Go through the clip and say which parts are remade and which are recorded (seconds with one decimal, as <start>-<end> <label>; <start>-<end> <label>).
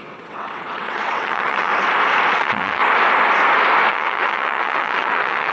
0.0-1.7 remade; 1.7-2.3 recorded; 2.3-2.8 remade; 2.8-3.9 recorded; 3.9-5.5 remade